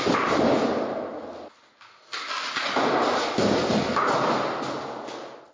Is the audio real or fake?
real